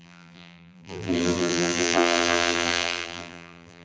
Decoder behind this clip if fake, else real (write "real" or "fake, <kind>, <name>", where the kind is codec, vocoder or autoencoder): fake, vocoder, BigVGAN v2